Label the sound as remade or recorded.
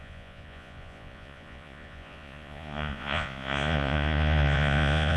remade